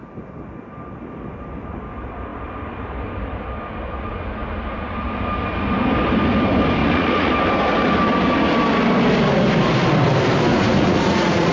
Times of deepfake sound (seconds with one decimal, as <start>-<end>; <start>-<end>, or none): 6.8-7.3; 10.5-11.5